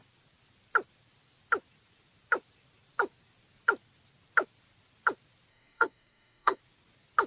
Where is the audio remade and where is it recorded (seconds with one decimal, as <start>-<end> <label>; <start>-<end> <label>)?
0.0-5.5 recorded; 5.5-6.6 remade; 6.6-7.3 recorded

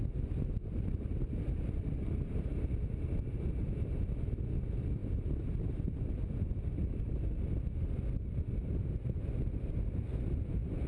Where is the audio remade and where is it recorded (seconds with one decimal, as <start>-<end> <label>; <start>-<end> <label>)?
0.0-10.9 recorded

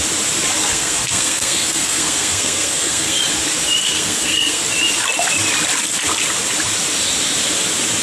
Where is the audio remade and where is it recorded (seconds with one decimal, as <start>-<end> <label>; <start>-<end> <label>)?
0.0-0.6 recorded; 0.6-3.2 remade; 3.2-3.8 recorded; 3.8-4.6 remade; 4.6-8.0 recorded

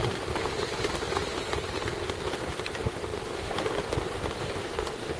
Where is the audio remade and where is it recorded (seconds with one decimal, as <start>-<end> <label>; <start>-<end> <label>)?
0.0-3.1 recorded; 3.1-4.3 remade; 4.3-5.2 recorded

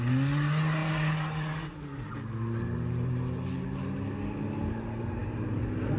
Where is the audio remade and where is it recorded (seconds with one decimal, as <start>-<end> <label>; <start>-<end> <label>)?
0.0-6.0 recorded

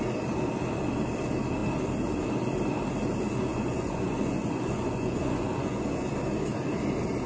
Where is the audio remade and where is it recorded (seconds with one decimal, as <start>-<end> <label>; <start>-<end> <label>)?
0.0-3.5 recorded; 3.5-6.1 remade; 6.1-7.3 recorded